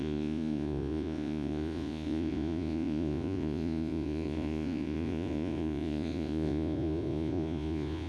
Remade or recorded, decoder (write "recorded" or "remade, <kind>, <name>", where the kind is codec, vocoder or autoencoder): remade, vocoder, Vocos